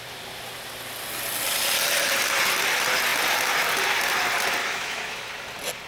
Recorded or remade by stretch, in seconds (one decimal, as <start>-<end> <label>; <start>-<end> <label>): 0.0-4.6 recorded; 4.6-5.3 remade; 5.3-5.9 recorded